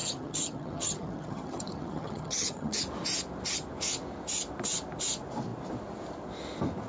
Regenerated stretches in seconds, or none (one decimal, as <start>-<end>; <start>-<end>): 0.0-2.8